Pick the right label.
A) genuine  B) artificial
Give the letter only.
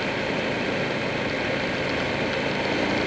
A